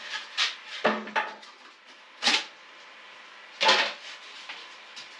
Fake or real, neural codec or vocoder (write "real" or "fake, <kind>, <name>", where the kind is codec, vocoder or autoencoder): real